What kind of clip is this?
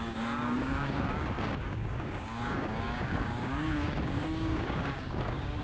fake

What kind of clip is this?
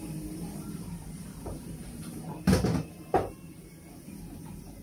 fake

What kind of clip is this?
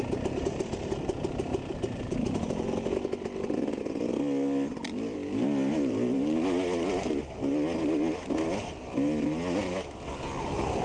real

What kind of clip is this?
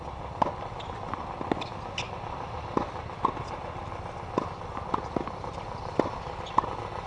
real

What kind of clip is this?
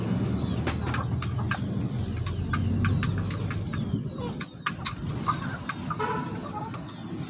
real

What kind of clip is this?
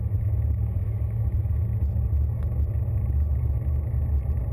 real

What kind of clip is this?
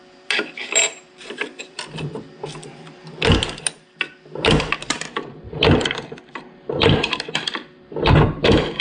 fake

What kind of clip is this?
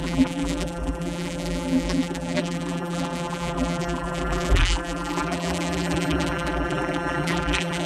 fake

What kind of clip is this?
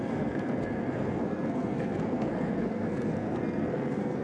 fake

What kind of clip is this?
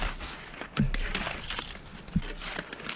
real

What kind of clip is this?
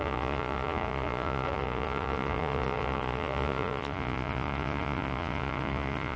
fake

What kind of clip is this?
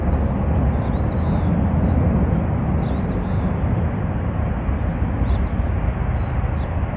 real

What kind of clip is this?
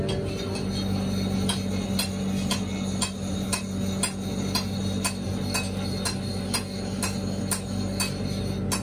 real